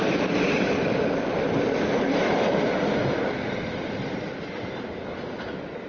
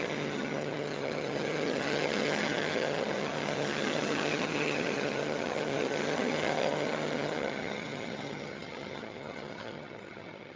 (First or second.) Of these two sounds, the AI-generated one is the second